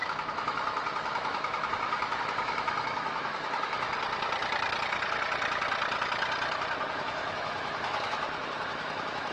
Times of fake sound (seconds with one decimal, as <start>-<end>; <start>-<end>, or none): 0.0-3.9; 6.9-9.3